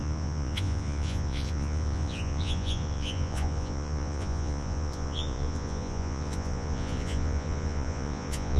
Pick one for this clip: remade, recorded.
remade